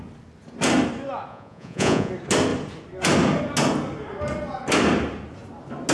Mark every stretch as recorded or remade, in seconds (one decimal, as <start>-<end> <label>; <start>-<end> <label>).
0.0-1.3 recorded; 1.3-2.1 remade; 2.1-5.9 recorded